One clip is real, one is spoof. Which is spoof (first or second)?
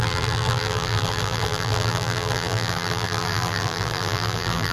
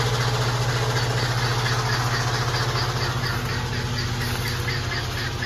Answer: first